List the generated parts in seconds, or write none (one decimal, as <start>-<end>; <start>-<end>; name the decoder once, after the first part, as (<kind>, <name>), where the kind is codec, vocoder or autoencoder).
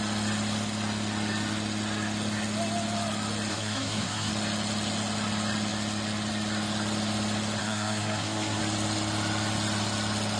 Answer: 3.5-4.3 (codec, SNAC); 7.6-8.6